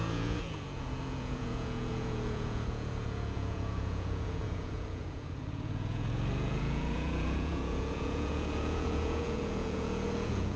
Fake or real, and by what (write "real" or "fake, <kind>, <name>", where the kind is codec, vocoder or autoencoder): fake, vocoder, Vocos